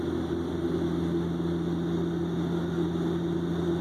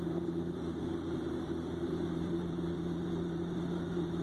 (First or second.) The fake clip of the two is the second